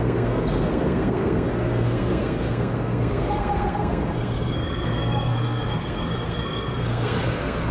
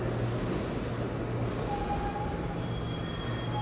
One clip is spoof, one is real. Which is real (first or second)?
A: second